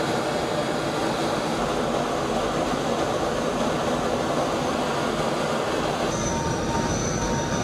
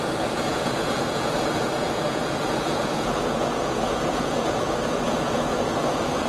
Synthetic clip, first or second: second